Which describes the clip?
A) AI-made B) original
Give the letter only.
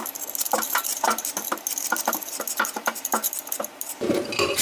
A